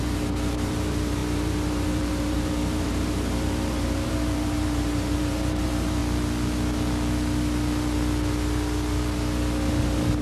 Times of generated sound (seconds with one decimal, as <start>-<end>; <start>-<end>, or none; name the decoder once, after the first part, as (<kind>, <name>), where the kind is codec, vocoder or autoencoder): 0.0-6.0 (vocoder, BigVGAN v2)